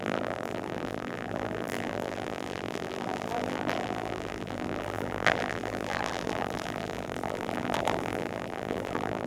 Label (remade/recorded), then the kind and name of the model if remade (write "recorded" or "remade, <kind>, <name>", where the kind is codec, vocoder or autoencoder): remade, vocoder, BigVGAN v2